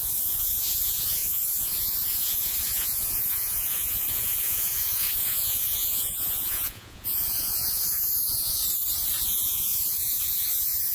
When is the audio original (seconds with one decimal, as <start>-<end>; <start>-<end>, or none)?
8.6-9.2